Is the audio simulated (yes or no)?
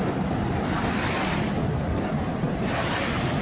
no